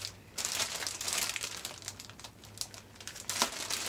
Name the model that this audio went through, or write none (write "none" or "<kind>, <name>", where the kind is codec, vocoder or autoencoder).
none